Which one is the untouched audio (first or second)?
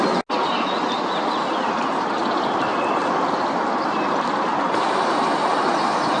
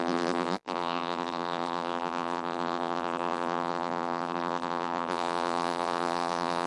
first